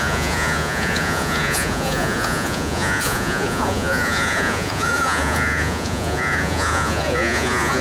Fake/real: fake